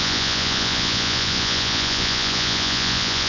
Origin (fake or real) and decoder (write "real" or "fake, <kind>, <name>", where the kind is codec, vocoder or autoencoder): fake, vocoder, Vocos